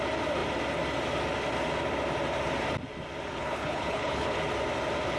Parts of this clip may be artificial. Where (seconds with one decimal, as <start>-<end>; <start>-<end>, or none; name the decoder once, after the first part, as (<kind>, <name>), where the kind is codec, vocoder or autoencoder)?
3.3-4.4 (codec, HILCodec)